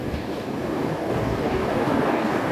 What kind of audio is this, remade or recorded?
remade